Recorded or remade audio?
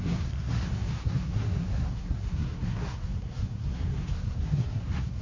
remade